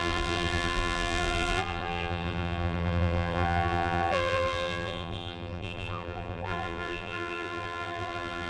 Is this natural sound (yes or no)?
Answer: no